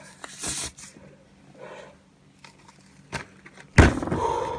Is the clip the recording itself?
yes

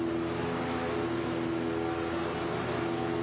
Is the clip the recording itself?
yes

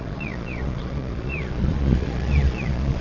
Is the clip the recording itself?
no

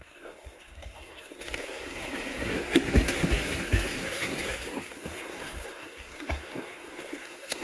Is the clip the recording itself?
no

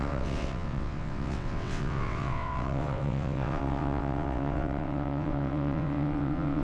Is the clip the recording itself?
no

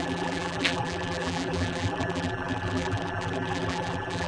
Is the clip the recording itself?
no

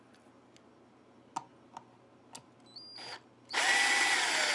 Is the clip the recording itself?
yes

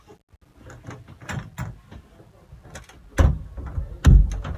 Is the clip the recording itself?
yes